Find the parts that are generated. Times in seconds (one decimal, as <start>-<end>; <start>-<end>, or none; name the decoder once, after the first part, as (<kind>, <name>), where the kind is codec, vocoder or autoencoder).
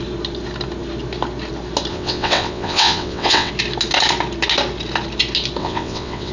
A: 1.9-3.5 (vocoder, WaveNeXt); 5.6-6.3